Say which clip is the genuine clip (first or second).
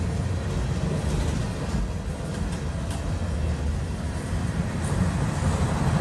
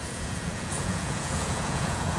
first